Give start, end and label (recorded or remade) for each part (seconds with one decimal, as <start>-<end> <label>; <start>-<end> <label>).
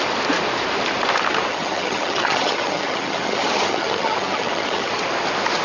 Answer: 0.0-1.5 recorded; 1.5-4.9 remade; 4.9-5.6 recorded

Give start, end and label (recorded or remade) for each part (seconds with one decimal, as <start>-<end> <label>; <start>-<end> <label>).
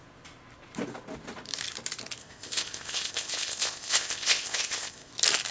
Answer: 0.0-2.2 recorded; 2.2-5.1 remade; 5.1-5.5 recorded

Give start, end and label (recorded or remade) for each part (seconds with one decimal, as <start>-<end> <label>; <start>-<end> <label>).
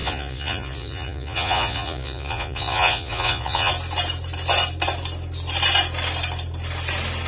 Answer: 0.0-3.7 remade; 3.7-7.3 recorded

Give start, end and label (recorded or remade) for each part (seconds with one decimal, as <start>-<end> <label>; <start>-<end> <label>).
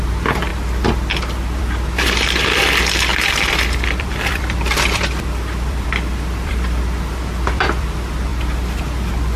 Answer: 0.0-0.5 remade; 0.5-1.6 recorded; 1.6-3.1 remade; 3.1-4.0 recorded; 4.0-8.3 remade; 8.3-9.4 recorded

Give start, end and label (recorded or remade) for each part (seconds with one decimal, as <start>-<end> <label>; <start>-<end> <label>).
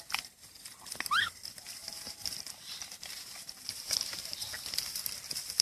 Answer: 0.0-1.8 recorded; 1.8-4.3 remade; 4.3-5.6 recorded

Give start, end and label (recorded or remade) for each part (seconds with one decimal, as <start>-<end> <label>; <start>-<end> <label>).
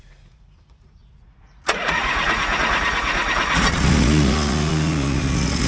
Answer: 0.0-5.7 remade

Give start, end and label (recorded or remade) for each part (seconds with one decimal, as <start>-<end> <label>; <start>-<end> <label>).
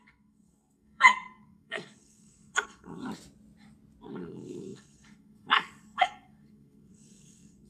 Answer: 0.0-3.0 remade; 3.0-4.1 recorded; 4.1-7.7 remade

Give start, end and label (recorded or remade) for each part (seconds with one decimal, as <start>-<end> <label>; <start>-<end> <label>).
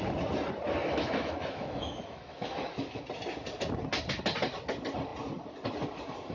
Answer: 0.0-0.8 recorded; 0.8-3.0 remade; 3.0-6.3 recorded